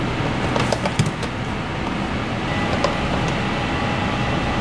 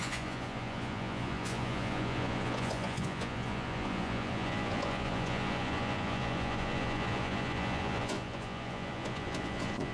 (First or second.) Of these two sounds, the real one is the first